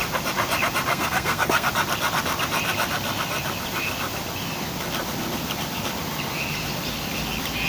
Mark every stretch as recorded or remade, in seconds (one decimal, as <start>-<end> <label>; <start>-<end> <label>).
0.0-0.9 recorded; 0.9-1.7 remade; 1.7-7.7 recorded